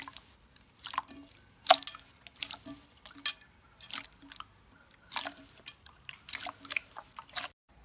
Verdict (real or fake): real